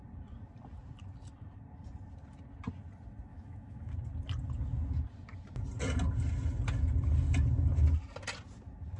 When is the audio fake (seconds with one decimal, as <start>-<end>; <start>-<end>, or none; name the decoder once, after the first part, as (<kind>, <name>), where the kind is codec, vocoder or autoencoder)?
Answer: 3.3-3.9 (autoencoder, DAC-VAE)